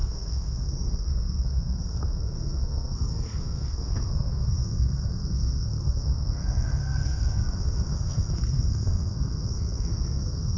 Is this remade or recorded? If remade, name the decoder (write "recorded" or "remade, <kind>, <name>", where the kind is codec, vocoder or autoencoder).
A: remade, codec, SNAC